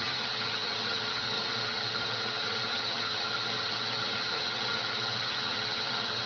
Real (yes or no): no